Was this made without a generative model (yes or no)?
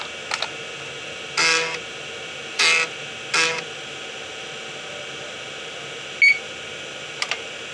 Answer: yes